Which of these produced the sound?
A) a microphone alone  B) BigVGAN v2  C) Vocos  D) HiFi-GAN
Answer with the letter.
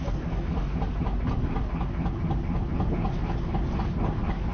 A